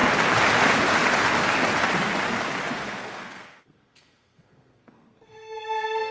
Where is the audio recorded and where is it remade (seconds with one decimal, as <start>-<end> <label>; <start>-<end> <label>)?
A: 0.0-2.7 recorded; 2.7-6.1 remade